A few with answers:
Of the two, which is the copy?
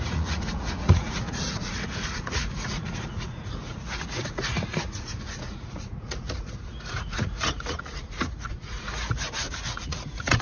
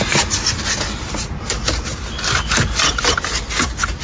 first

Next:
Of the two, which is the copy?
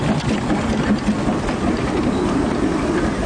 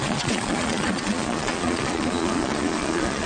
second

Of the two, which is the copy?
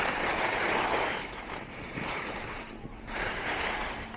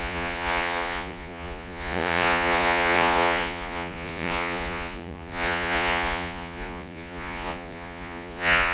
second